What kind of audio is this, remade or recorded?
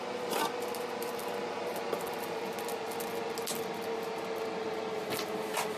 recorded